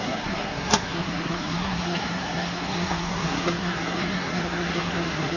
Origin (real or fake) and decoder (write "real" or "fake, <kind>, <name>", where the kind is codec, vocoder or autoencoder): fake, codec, SNAC